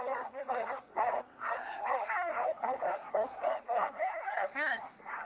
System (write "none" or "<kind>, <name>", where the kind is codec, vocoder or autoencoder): codec, SNAC